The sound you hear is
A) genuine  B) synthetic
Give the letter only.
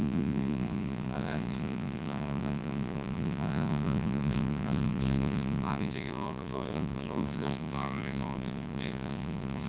B